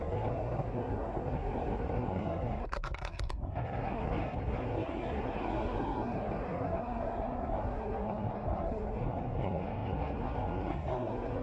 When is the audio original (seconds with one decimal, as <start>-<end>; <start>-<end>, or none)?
none